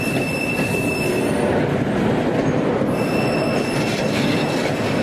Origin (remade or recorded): remade